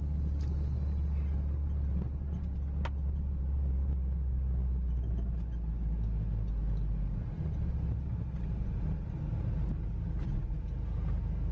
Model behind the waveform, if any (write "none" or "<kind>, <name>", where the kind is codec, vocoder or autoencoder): none